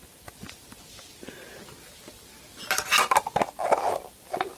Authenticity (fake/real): real